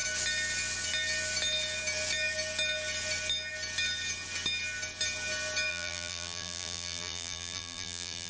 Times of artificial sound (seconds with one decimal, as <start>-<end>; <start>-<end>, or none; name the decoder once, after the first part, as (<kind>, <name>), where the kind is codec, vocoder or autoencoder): 5.7-8.3 (vocoder, BigVGAN v2)